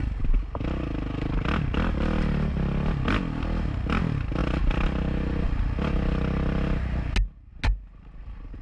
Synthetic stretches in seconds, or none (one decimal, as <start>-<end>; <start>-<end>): none